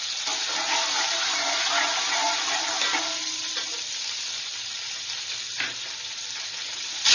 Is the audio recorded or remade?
recorded